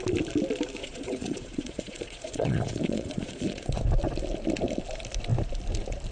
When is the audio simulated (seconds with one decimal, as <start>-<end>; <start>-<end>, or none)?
0.8-3.8